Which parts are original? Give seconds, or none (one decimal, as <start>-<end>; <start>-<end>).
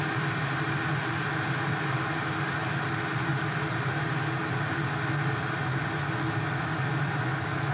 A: 0.0-7.7